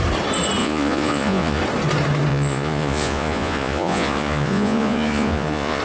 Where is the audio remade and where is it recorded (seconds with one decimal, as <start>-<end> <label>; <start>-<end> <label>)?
0.0-0.6 recorded; 0.6-1.6 remade; 1.6-2.3 recorded; 2.3-5.8 remade